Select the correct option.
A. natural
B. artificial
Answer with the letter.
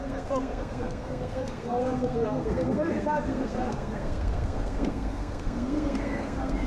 B